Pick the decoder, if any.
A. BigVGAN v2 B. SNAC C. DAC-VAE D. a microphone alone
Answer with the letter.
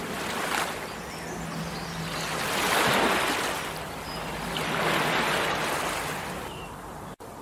D